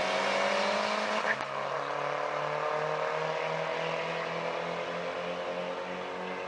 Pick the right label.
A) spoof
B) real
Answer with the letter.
B